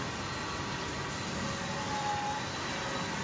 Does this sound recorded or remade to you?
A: recorded